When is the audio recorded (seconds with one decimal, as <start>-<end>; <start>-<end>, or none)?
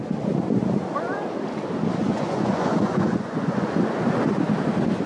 0.0-2.0; 4.0-5.1